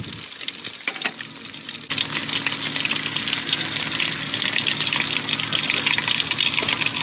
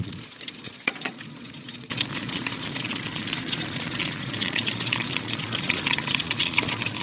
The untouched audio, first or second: first